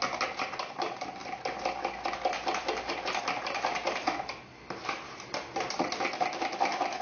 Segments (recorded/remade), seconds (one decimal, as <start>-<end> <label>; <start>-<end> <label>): 0.0-7.0 recorded